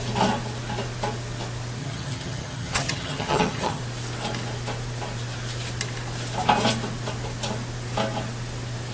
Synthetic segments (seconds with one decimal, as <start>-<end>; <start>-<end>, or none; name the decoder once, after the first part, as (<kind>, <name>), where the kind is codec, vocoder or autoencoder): 1.8-3.8 (vocoder, HiFi-GAN)